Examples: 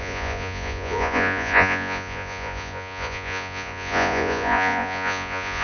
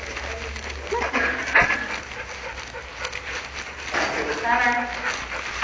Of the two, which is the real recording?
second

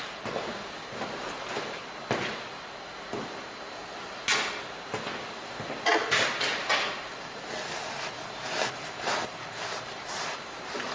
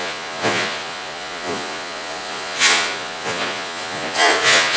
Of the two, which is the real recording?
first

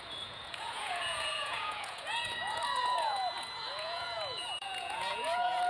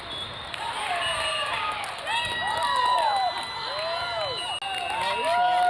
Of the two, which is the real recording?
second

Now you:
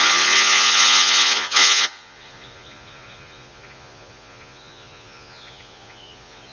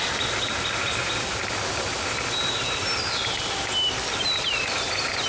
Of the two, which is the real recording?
second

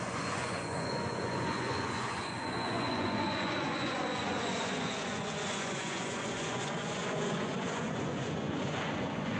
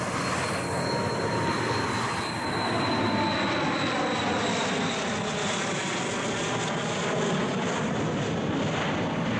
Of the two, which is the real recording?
second